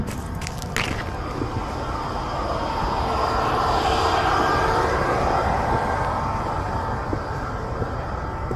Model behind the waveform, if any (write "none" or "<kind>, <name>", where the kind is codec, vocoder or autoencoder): none